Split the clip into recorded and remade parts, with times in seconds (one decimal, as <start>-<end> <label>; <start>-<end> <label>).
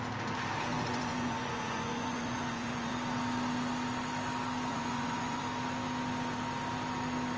0.0-0.7 recorded; 0.7-2.9 remade; 2.9-4.7 recorded; 4.7-5.4 remade; 5.4-7.4 recorded